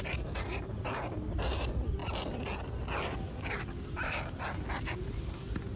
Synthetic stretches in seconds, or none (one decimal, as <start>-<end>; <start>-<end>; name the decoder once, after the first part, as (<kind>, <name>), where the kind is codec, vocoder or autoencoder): none